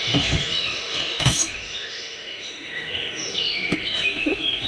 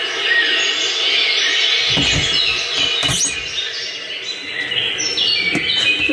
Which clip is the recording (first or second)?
second